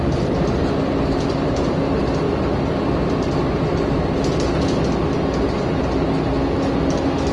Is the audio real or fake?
real